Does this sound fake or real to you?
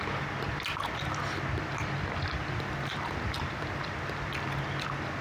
real